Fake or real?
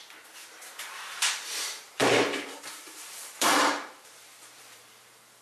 fake